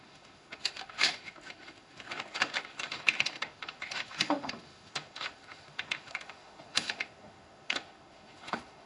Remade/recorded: remade